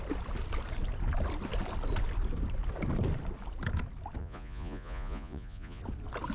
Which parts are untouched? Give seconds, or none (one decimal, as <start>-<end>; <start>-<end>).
0.0-4.2; 5.8-6.3